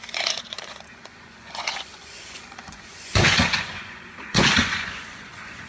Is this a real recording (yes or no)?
no